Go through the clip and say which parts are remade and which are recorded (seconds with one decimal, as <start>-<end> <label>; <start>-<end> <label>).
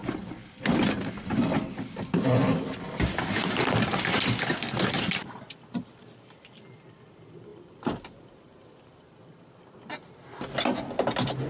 0.0-11.5 recorded